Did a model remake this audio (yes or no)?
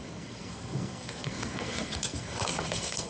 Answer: yes